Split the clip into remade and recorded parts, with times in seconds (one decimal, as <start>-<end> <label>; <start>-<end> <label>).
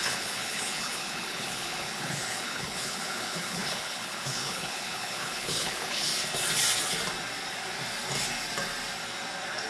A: 0.0-6.1 remade; 6.1-9.7 recorded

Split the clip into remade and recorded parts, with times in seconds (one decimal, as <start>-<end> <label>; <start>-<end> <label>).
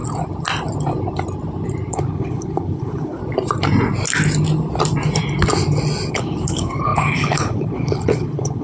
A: 0.0-1.9 recorded; 1.9-3.2 remade; 3.2-6.1 recorded; 6.1-8.6 remade